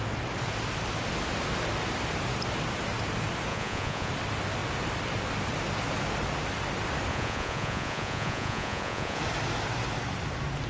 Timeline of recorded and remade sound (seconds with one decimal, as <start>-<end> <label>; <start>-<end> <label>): 0.0-3.5 recorded; 3.5-4.1 remade; 4.1-7.1 recorded; 7.1-9.2 remade; 9.2-10.7 recorded

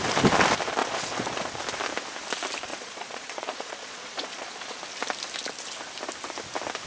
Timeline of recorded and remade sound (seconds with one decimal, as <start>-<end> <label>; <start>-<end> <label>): 0.0-0.8 recorded; 0.8-1.5 remade; 1.5-2.7 recorded; 2.7-4.8 remade; 4.8-6.9 recorded

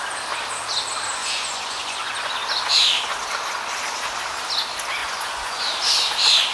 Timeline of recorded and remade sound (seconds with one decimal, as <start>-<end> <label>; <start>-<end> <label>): 0.0-1.2 recorded; 1.2-2.3 remade; 2.3-5.0 recorded; 5.0-5.6 remade; 5.6-6.5 recorded

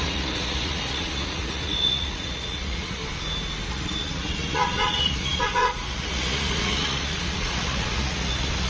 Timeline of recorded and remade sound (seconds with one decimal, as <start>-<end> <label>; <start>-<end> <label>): 0.0-3.0 remade; 3.0-3.7 recorded; 3.7-8.7 remade

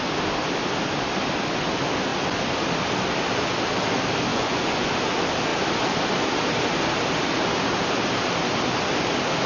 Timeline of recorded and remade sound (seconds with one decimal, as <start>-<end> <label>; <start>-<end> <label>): 0.0-4.3 recorded; 4.3-4.9 remade; 4.9-9.5 recorded

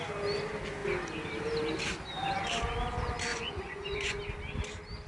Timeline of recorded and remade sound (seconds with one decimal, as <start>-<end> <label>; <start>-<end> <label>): 0.0-3.3 recorded; 3.3-4.2 remade; 4.2-5.1 recorded